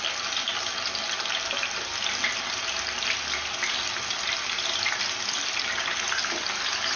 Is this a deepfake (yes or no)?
no